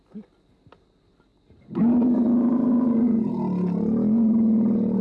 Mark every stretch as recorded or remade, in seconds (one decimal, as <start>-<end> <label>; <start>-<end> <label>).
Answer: 0.0-5.0 recorded